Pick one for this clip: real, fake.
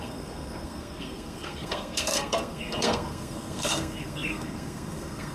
fake